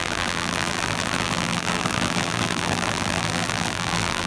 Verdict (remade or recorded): remade